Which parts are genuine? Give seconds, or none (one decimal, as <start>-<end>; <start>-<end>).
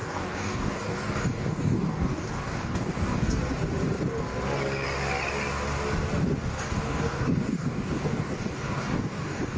3.4-6.8